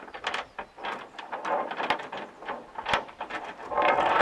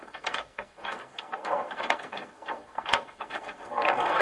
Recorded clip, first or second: first